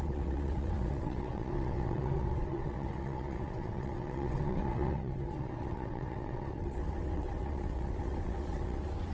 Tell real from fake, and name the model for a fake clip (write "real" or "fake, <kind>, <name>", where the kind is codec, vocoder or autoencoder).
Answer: fake, vocoder, WaveNeXt